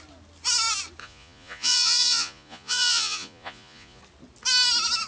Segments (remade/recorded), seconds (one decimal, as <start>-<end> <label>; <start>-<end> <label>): 0.0-1.0 recorded; 1.0-4.0 remade; 4.0-5.1 recorded